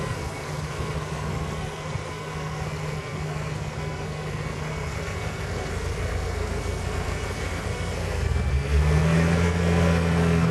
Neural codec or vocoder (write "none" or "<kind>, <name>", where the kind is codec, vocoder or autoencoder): codec, SNAC